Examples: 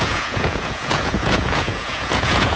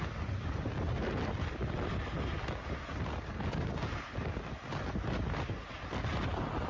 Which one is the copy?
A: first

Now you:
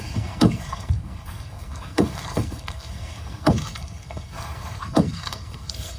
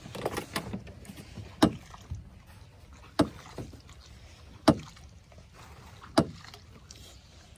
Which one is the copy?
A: first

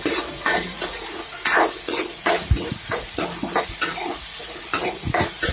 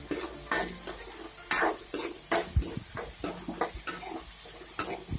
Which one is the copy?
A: first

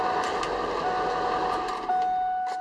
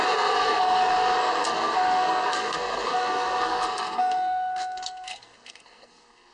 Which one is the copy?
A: second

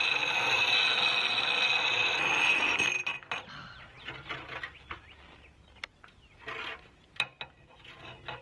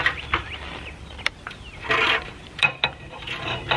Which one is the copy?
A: second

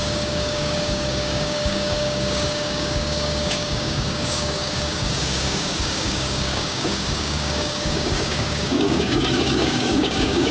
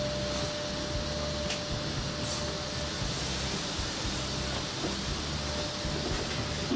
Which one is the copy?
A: first